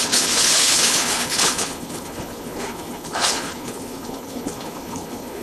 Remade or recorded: remade